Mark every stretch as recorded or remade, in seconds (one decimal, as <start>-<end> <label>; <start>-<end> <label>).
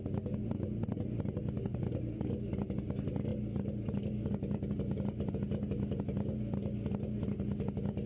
0.0-8.1 recorded